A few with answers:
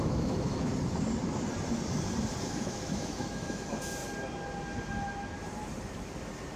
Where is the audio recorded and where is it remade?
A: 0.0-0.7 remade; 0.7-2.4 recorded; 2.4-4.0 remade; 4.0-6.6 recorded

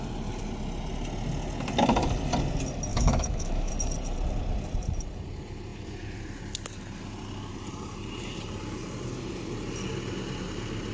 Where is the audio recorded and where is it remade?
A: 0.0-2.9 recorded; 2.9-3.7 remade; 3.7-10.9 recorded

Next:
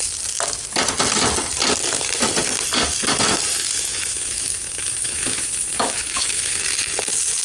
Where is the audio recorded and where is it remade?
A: 0.0-3.5 recorded; 3.5-6.6 remade; 6.6-7.4 recorded

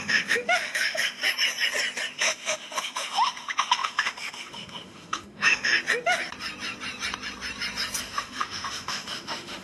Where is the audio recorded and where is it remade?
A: 0.0-1.2 remade; 1.2-2.1 recorded; 2.1-5.7 remade; 5.7-8.0 recorded; 8.0-9.6 remade

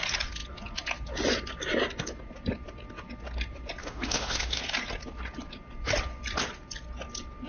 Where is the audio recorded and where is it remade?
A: 0.0-3.8 recorded; 3.8-4.6 remade; 4.6-7.5 recorded